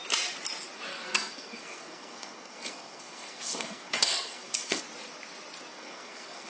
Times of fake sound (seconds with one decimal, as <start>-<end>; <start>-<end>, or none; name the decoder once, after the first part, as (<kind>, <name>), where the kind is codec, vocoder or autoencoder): 0.9-4.8 (codec, SNAC); 5.7-6.5